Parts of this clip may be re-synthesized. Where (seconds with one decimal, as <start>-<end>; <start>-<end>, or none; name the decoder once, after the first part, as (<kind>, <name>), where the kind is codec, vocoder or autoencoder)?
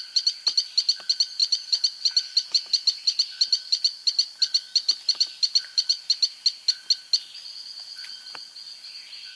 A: 1.4-6.0 (vocoder, BigVGAN v2)